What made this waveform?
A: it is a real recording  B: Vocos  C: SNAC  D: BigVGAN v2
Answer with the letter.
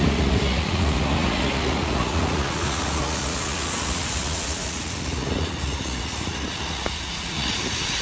B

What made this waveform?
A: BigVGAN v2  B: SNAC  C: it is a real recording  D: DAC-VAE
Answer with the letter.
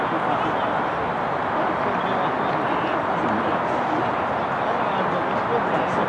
C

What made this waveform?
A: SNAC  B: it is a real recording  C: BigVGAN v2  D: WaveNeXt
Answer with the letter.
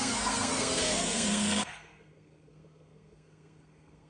A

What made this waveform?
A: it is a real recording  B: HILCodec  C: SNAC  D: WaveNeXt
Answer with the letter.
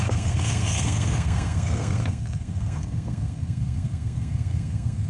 C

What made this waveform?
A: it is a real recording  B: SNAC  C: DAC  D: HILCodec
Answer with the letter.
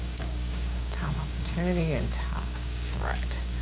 C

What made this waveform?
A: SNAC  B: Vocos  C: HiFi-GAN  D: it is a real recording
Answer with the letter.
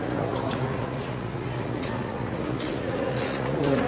B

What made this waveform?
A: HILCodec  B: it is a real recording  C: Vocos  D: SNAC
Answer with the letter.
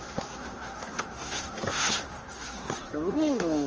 D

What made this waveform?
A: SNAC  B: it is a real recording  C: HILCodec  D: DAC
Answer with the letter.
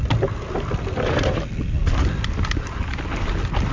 B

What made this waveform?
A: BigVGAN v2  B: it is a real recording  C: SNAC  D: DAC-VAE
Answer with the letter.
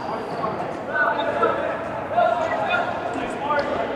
A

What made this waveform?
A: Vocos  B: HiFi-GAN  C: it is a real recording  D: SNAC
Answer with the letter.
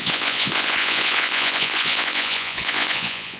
A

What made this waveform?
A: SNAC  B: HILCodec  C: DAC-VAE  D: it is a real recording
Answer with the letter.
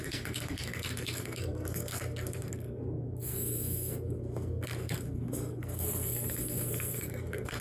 A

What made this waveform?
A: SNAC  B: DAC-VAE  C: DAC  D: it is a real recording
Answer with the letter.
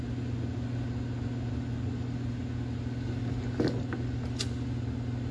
D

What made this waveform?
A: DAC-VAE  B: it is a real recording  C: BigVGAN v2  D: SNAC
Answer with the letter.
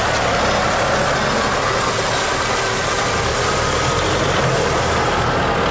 B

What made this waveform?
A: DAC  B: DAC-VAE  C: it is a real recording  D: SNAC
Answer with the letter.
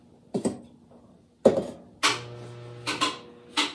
C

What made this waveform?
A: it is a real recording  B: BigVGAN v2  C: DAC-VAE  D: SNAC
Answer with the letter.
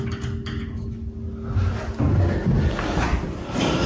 A